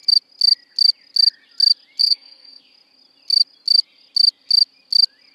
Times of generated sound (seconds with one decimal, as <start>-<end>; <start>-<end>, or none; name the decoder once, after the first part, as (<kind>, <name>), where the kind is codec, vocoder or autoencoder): 2.0-2.6 (codec, SNAC)